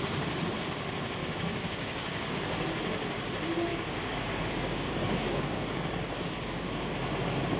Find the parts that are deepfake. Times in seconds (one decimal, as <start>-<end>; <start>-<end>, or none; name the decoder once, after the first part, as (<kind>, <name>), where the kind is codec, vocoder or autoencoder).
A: 1.2-2.3 (codec, DAC); 3.7-6.9